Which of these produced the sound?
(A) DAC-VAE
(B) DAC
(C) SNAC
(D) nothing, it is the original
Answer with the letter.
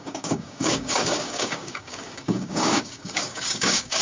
B